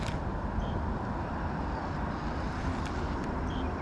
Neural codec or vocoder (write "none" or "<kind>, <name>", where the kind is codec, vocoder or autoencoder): none